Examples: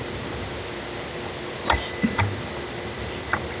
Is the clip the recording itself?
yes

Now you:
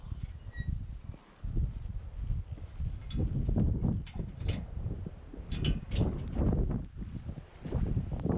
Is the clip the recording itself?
yes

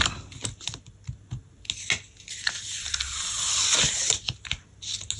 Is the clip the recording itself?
yes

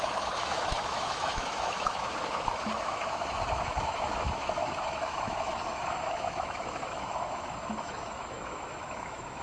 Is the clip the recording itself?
no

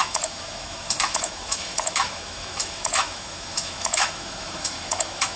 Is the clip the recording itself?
no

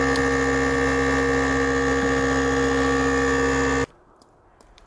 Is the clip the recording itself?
yes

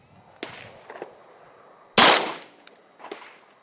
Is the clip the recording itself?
yes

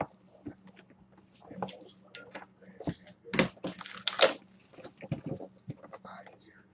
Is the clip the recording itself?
yes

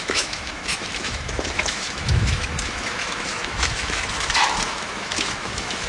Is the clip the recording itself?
no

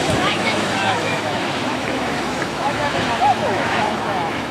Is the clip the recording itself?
no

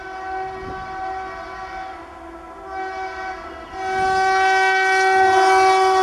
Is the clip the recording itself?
yes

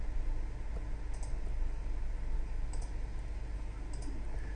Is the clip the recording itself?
yes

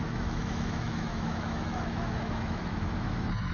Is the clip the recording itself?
no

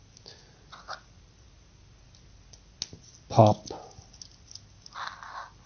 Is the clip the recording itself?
yes